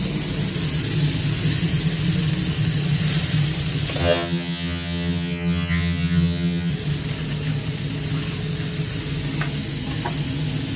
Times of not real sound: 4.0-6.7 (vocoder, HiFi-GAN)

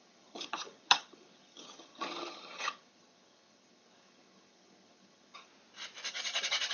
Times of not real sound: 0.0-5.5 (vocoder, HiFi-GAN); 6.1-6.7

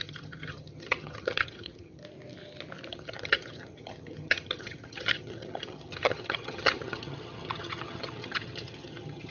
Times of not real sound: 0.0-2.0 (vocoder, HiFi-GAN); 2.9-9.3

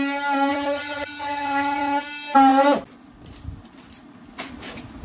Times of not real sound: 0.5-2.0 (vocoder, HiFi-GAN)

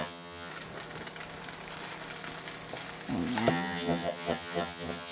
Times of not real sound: 0.0-0.5 (vocoder, HiFi-GAN); 3.5-5.1

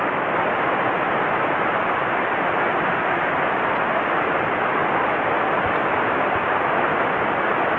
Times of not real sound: none

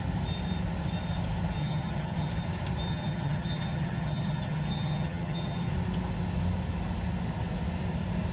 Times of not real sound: 1.6-2.3 (vocoder, HiFi-GAN); 2.9-5.7

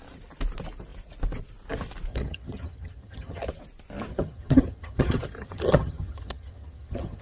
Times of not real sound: 2.1-3.5 (vocoder, HiFi-GAN); 4.1-7.2